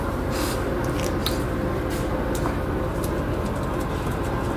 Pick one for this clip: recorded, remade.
recorded